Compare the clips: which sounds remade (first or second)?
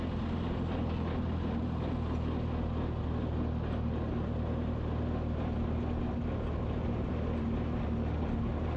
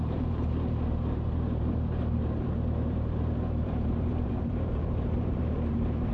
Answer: second